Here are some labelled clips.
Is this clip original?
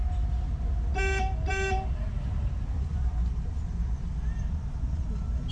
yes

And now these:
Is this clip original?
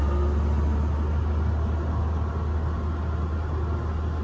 yes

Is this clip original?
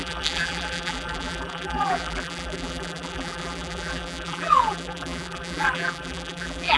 no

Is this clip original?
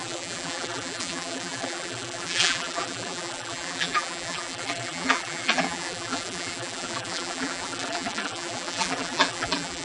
no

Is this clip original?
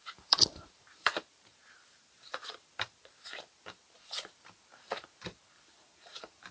no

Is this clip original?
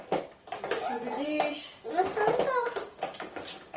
yes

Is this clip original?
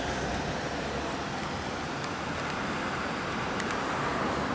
no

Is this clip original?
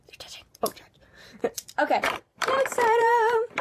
no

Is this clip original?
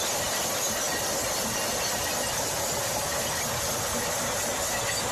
yes